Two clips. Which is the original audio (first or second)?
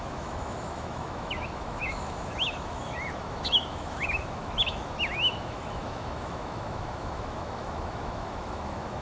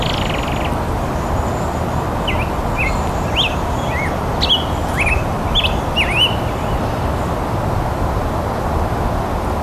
second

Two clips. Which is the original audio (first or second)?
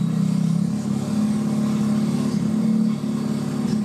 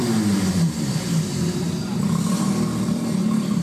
first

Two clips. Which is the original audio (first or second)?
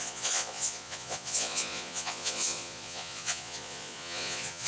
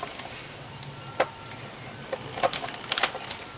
second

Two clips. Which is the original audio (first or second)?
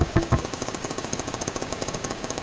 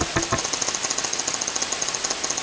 second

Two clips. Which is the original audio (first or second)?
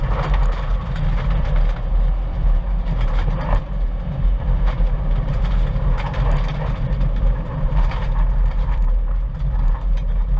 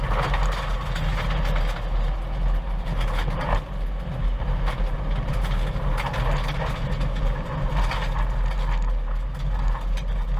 second